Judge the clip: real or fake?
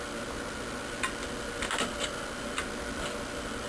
real